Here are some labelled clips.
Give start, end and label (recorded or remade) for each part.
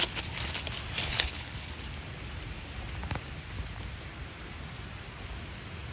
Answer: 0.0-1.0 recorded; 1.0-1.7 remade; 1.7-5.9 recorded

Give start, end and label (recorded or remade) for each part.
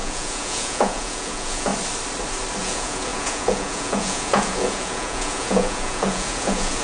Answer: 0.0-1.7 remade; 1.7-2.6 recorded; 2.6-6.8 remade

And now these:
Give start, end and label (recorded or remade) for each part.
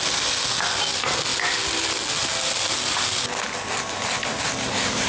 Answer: 0.0-5.1 recorded